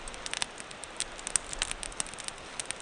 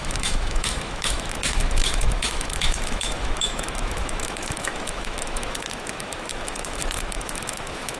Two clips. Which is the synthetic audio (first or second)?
second